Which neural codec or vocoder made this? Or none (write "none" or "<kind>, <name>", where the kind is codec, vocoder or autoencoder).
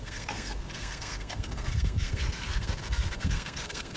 codec, SNAC